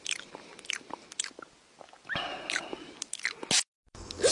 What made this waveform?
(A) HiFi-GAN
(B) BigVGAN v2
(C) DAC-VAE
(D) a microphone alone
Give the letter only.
D